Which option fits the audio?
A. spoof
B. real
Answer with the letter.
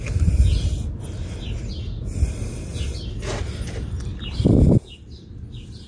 B